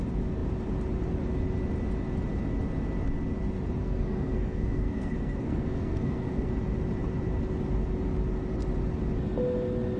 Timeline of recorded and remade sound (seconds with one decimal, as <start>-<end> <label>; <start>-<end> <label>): 0.0-3.8 recorded; 3.8-6.5 remade; 6.5-10.0 recorded